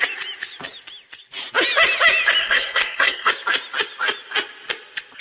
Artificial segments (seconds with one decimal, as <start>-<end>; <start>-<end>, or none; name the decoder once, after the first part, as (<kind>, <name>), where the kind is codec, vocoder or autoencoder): 2.4-3.3 (codec, SNAC)